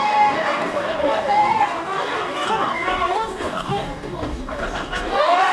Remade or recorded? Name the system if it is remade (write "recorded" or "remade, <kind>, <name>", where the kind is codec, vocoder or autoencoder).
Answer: remade, codec, DAC